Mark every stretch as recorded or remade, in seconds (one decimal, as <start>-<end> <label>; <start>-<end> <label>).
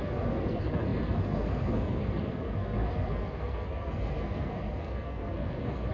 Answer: 0.0-5.9 remade